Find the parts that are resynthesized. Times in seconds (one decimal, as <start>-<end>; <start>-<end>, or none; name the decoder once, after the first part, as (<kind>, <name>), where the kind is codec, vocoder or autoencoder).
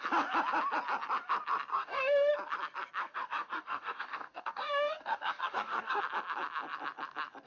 1.7-2.3 (codec, DAC); 3.0-6.0